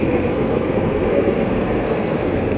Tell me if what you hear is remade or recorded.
remade